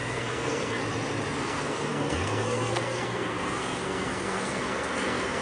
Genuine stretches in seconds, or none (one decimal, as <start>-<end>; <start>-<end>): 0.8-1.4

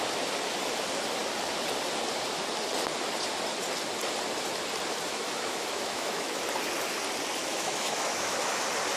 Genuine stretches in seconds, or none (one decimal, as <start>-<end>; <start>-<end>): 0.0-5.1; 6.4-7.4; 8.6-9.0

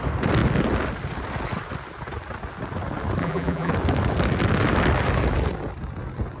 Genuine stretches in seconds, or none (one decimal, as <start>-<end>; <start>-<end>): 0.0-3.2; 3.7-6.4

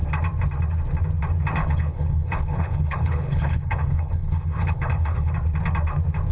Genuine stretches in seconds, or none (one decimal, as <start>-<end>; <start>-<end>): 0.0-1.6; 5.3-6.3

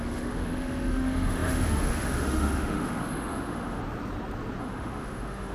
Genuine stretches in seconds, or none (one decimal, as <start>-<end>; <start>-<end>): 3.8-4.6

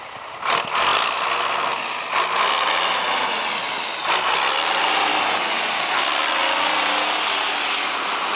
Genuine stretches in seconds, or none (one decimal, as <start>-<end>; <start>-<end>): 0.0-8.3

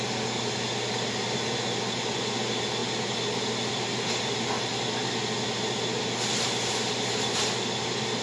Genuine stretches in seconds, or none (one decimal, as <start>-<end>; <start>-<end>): 0.0-8.2

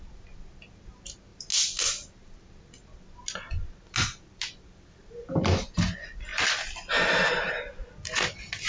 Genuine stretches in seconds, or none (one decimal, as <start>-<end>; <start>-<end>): 0.0-8.7